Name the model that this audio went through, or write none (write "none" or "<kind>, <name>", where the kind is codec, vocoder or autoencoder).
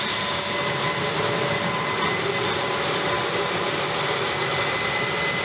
none